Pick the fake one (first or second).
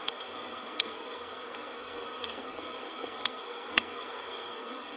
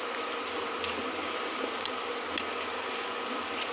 first